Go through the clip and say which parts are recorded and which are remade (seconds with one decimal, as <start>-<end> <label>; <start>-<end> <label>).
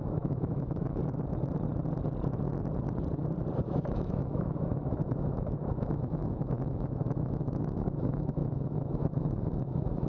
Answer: 0.0-1.0 remade; 1.0-3.6 recorded; 3.6-10.1 remade